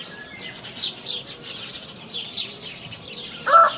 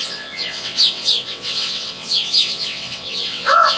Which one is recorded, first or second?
first